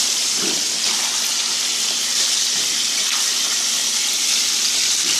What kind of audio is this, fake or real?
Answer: fake